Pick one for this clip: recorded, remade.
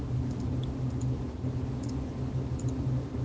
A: recorded